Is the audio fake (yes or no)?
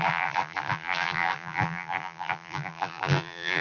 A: yes